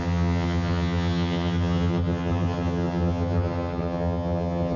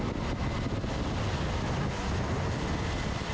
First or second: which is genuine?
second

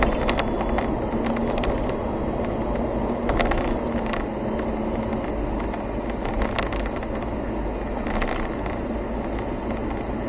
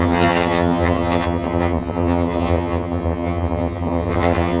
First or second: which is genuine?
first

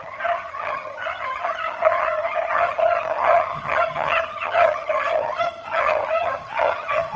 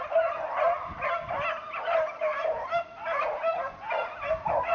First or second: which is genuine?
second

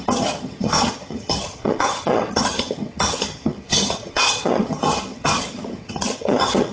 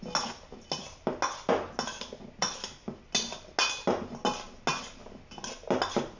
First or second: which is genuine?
second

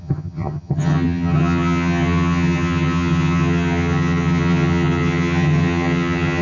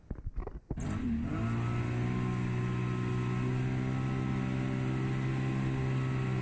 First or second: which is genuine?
second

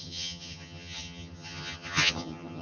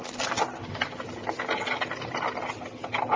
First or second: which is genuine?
second